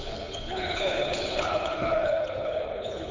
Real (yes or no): no